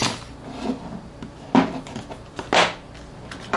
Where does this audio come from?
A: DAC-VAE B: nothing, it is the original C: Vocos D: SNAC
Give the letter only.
B